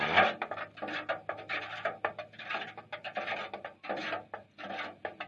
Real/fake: real